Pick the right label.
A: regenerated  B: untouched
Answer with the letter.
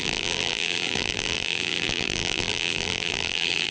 A